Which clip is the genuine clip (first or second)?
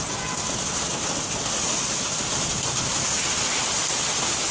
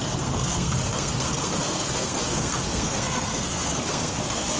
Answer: first